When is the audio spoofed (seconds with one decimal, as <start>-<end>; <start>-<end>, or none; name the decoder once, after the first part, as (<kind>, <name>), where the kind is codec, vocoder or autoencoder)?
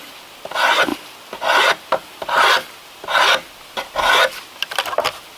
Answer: none